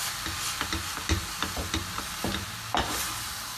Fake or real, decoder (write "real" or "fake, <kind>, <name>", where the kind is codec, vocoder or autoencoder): real